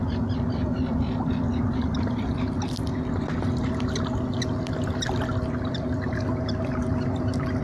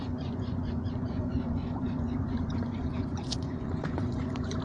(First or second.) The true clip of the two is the first